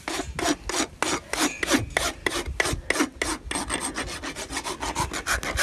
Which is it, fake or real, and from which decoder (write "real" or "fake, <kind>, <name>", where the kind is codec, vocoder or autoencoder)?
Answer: real